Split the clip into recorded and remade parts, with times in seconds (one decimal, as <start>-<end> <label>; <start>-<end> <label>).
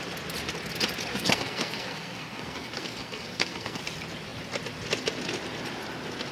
0.0-1.1 recorded; 1.1-3.8 remade; 3.8-6.3 recorded